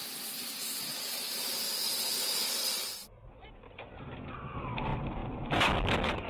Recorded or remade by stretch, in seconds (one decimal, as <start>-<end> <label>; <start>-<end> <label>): 0.0-3.0 remade; 3.0-3.5 recorded; 3.5-6.3 remade